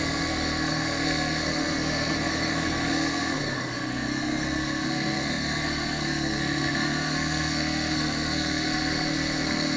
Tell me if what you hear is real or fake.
fake